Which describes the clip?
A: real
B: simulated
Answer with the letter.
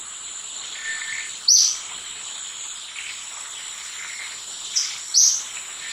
A